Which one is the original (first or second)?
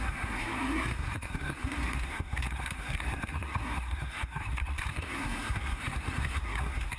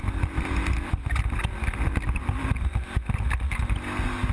second